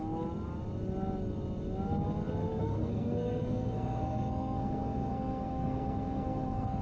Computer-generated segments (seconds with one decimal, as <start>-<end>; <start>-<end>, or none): 2.5-6.8